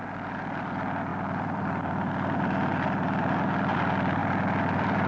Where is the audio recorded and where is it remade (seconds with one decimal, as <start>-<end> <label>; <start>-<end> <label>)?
0.0-1.1 recorded; 1.1-2.1 remade; 2.1-2.7 recorded; 2.7-3.4 remade; 3.4-4.2 recorded; 4.2-5.1 remade